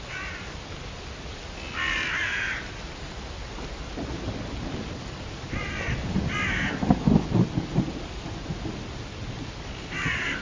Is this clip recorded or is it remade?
recorded